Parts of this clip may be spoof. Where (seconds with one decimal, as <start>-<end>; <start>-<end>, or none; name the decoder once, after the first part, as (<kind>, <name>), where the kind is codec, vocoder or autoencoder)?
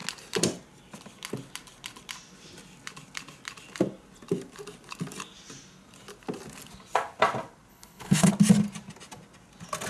7.7-8.3 (codec, HILCodec)